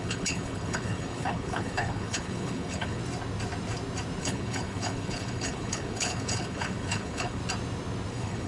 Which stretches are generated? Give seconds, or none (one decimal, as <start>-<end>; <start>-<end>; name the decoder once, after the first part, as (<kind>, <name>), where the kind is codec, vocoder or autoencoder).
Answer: 0.0-3.0 (codec, HILCodec); 4.2-7.4; 8.1-8.5